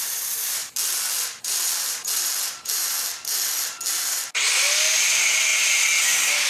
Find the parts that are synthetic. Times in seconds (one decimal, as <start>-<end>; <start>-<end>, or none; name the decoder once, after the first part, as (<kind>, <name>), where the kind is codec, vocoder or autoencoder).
none